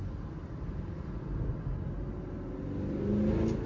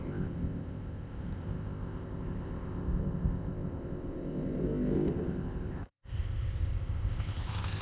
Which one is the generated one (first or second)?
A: second